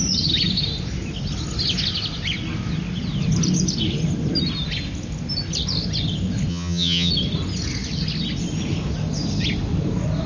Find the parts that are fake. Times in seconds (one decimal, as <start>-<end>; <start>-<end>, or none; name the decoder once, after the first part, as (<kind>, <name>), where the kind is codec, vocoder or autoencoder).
6.5-7.1 (vocoder, HiFi-GAN)